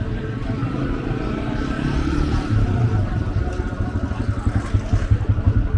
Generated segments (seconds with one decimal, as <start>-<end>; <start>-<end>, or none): none